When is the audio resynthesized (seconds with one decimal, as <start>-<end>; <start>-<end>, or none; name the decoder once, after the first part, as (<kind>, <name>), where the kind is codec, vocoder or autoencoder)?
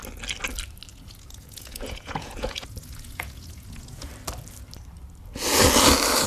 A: 0.9-4.1 (vocoder, Vocos)